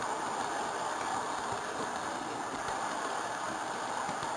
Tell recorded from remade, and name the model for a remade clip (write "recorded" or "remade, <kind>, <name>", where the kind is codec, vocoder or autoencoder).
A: recorded